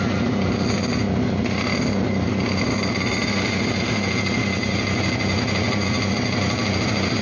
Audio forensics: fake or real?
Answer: real